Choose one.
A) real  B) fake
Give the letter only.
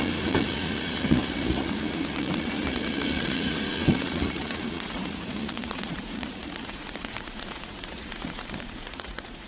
B